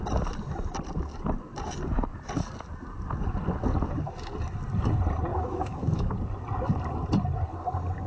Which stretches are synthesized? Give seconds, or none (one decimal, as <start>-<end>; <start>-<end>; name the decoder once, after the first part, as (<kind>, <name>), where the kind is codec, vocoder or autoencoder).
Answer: 5.3-6.1 (autoencoder, DAC-VAE)